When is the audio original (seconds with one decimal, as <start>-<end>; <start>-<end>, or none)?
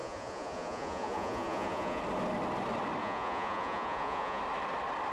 2.0-3.0; 4.4-5.1